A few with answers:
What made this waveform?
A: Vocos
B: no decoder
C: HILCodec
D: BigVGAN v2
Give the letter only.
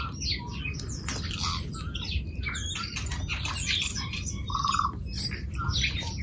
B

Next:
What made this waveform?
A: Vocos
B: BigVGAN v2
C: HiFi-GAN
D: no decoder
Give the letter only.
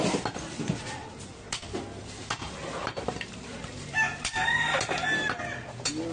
D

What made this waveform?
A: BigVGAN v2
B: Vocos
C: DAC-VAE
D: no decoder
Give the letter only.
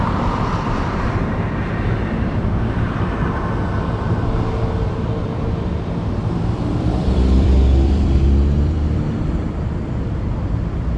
A